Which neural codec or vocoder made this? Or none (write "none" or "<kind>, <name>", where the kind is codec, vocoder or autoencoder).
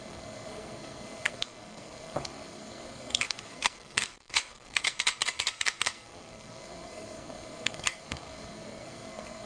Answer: codec, SNAC